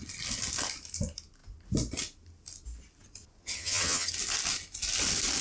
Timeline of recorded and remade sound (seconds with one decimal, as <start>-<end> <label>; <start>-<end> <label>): 0.0-3.4 recorded; 3.4-4.1 remade; 4.1-5.4 recorded

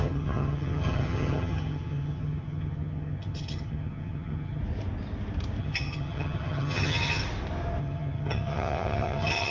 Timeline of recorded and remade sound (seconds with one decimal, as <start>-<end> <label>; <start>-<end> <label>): 0.0-4.6 remade; 4.6-5.6 recorded; 5.6-7.2 remade; 7.2-7.8 recorded; 7.8-9.5 remade

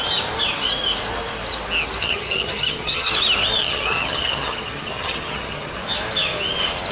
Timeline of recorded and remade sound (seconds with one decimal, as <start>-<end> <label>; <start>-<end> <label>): 0.0-2.0 recorded; 2.0-3.1 remade; 3.1-3.6 recorded; 3.6-5.8 remade; 5.8-6.9 recorded

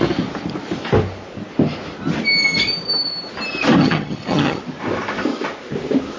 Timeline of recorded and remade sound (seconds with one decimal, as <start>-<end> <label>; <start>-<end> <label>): 0.0-3.8 recorded; 3.8-4.6 remade; 4.6-6.2 recorded

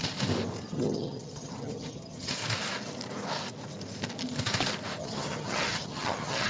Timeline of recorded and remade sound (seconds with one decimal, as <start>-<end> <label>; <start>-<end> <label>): 0.0-0.7 recorded; 0.7-2.4 remade; 2.4-5.0 recorded; 5.0-6.5 remade

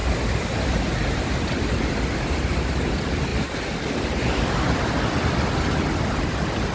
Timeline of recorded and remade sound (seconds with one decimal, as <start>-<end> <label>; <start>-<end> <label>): 0.0-6.7 recorded

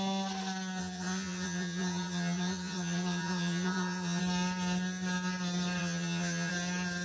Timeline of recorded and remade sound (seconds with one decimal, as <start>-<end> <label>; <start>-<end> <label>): 0.0-0.8 recorded; 0.8-4.2 remade; 4.2-5.8 recorded; 5.8-6.5 remade; 6.5-7.0 recorded